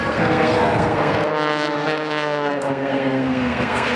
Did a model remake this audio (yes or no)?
yes